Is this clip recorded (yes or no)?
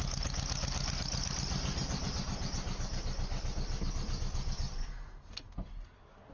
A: yes